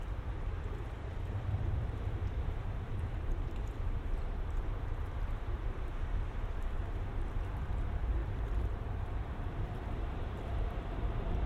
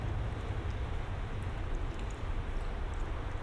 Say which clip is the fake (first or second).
first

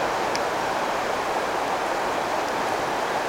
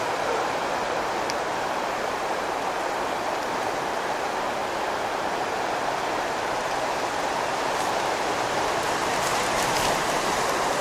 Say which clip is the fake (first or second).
second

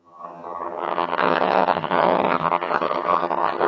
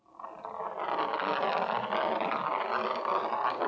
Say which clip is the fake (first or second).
first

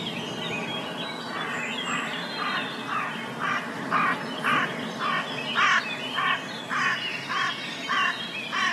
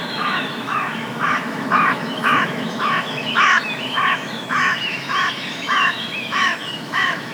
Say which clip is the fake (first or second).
second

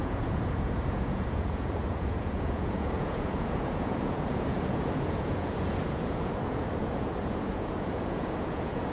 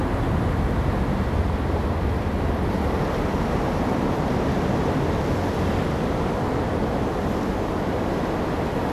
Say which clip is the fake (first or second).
first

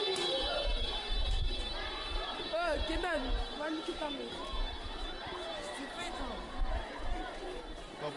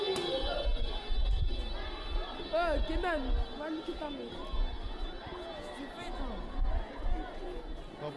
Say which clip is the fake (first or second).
first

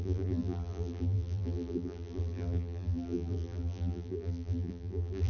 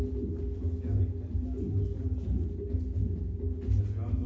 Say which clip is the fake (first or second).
first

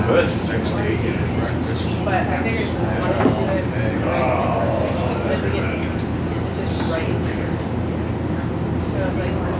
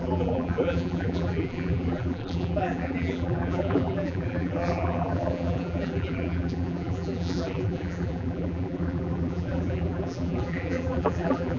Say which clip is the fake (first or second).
second